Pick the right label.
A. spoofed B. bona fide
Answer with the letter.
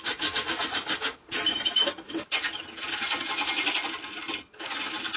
B